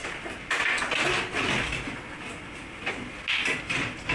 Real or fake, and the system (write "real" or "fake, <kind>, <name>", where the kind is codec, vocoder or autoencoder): real